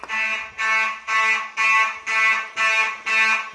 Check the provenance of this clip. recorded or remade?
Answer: recorded